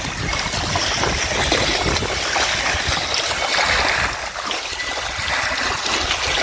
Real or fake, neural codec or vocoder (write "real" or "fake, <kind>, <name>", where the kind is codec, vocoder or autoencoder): real